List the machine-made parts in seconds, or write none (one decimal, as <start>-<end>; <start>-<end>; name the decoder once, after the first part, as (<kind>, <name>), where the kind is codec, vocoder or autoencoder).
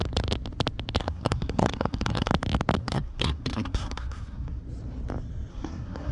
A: 1.0-2.3 (codec, SNAC); 2.8-4.6; 5.5-6.1